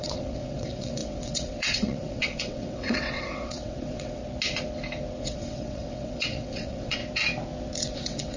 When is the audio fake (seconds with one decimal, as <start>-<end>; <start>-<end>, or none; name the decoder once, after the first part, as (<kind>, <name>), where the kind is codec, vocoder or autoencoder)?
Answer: 0.0-4.2 (vocoder, WaveNeXt); 5.2-7.0; 7.8-8.4